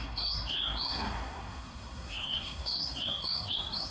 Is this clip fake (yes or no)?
yes